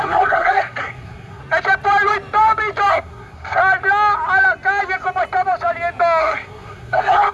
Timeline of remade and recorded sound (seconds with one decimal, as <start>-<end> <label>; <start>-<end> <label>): 0.0-1.4 remade; 1.4-2.9 recorded; 2.9-3.6 remade; 3.6-6.2 recorded; 6.2-7.3 remade

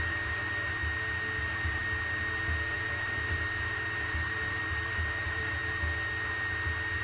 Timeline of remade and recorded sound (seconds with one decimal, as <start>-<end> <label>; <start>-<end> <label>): 0.0-0.8 remade; 0.8-1.4 recorded; 1.4-1.8 remade; 1.8-2.7 recorded; 2.7-5.6 remade; 5.6-7.0 recorded